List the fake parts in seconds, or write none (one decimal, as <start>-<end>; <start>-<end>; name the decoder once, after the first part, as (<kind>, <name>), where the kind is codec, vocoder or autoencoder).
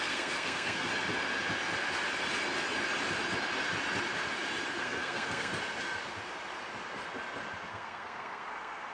0.0-0.9 (codec, SNAC); 4.8-5.5; 7.7-8.9